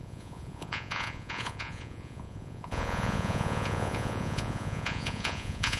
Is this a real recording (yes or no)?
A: no